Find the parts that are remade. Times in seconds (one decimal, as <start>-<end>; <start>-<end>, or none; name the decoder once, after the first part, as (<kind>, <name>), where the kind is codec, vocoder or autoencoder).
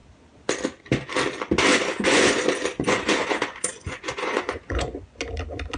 1.7-5.2 (vocoder, Vocos)